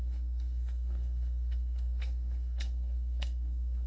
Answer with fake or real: fake